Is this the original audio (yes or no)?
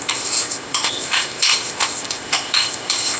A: no